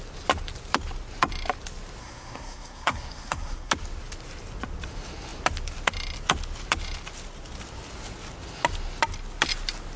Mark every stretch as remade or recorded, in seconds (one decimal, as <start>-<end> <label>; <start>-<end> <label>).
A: 0.0-2.0 recorded; 2.0-3.7 remade; 3.7-10.0 recorded